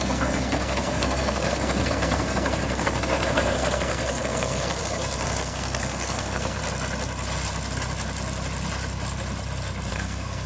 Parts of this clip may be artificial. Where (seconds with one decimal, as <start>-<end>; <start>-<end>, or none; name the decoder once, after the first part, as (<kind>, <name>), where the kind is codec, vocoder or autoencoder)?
0.0-6.6 (codec, SNAC); 9.9-10.5